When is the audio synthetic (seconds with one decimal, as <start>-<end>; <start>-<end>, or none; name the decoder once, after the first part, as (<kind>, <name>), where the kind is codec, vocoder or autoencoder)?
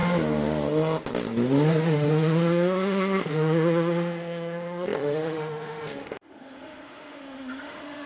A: 1.8-8.1 (autoencoder, DAC-VAE)